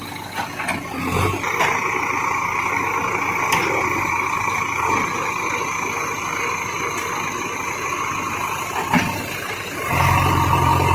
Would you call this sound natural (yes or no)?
yes